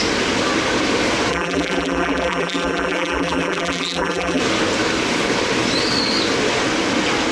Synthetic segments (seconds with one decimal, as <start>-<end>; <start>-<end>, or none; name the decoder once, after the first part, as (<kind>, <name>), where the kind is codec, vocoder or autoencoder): 1.3-4.4 (vocoder, BigVGAN v2)